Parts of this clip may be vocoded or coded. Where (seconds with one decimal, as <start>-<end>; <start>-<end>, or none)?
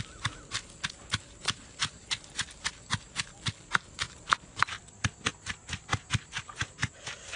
none